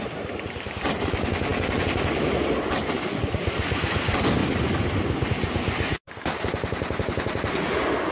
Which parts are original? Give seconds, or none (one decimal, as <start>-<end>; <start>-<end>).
0.0-8.1